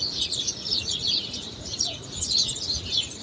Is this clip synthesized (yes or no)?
yes